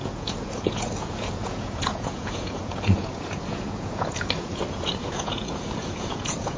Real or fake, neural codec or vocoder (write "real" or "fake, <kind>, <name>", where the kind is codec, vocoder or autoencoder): fake, vocoder, Vocos